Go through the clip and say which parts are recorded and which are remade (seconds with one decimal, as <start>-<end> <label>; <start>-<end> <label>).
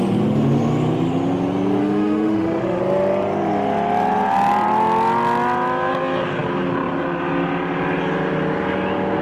0.0-1.8 recorded; 1.8-2.8 remade; 2.8-9.2 recorded